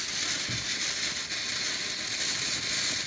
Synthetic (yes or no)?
no